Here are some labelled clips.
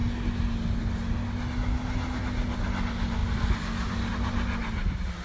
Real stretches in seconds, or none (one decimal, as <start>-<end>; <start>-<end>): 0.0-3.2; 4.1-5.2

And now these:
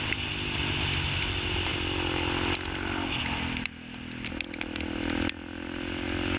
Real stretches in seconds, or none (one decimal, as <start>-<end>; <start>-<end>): 0.0-6.4

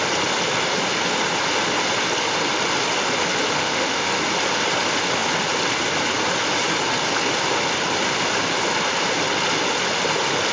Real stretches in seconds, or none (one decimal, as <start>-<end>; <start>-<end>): 0.0-3.6; 4.2-10.5

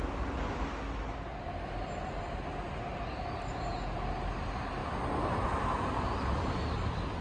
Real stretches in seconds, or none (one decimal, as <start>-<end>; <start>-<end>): 0.0-4.8; 5.9-7.2

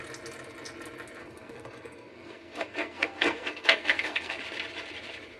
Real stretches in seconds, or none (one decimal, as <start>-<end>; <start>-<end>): 0.0-1.2; 4.4-5.4

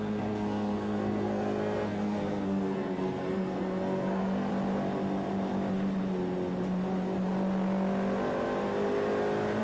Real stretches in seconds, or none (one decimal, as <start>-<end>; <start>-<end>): 4.5-9.6

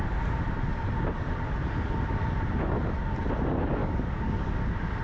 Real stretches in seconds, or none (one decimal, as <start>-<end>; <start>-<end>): 0.0-3.8; 4.5-5.0